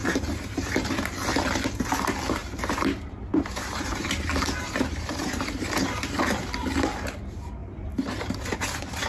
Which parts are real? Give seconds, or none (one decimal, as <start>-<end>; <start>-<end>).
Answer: 0.9-2.4; 6.2-7.6